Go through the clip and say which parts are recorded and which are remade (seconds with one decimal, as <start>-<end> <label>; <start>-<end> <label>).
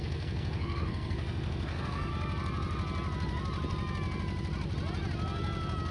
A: 0.0-2.1 remade; 2.1-5.9 recorded